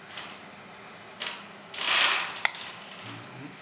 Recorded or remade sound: recorded